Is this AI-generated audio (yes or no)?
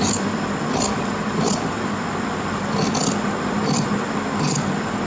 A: no